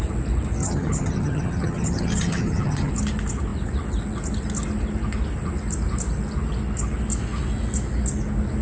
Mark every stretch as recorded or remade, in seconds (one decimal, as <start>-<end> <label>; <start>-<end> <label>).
0.0-0.6 recorded; 0.6-2.9 remade; 2.9-8.6 recorded